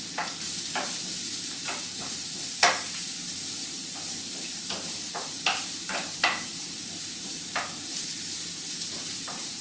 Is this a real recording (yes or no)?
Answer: no